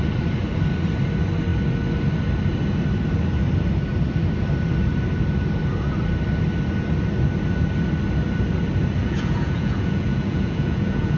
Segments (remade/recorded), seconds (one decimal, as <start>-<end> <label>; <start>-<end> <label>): 0.0-9.0 recorded; 9.0-11.2 remade